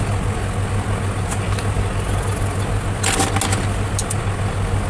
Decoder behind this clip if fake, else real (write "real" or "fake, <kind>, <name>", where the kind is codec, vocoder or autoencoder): real